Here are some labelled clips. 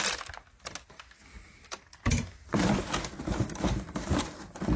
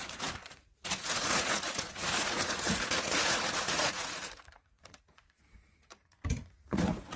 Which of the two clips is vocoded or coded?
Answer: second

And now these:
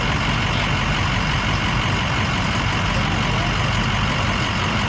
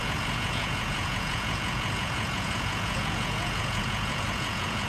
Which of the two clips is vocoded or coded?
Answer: second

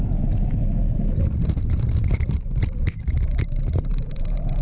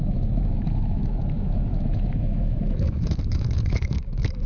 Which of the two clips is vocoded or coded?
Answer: second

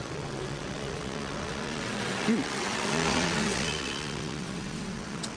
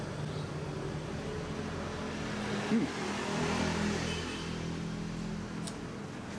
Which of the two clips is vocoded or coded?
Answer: first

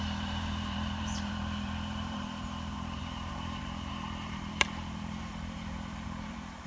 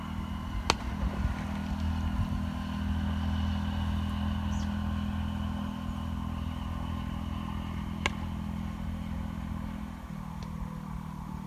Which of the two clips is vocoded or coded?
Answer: first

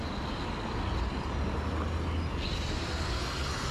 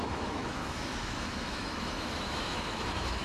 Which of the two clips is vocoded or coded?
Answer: second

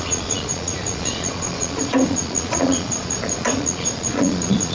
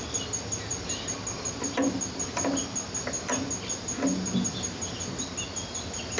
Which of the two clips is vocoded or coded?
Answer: first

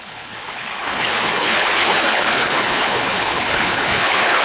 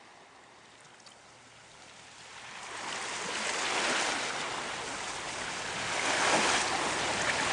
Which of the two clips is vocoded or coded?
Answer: first